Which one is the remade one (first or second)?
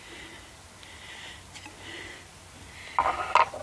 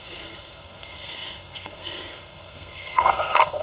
second